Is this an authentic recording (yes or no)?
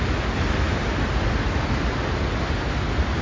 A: yes